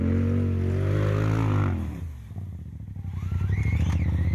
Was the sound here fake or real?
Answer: real